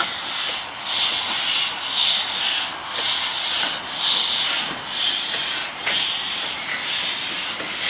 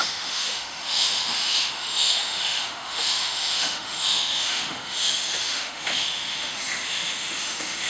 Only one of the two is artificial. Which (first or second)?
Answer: second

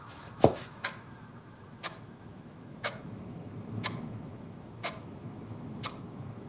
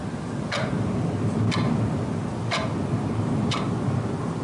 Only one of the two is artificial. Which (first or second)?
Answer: first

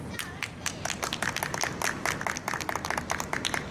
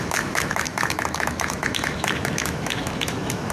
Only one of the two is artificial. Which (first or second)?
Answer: second